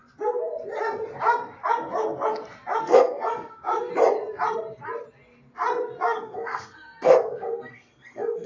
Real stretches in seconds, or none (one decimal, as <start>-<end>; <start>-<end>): 0.0-2.8; 3.9-6.0